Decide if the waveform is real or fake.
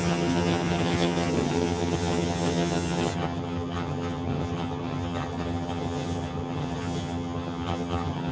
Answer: fake